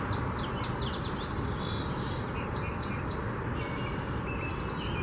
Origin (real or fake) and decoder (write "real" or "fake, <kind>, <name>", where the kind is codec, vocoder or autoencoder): real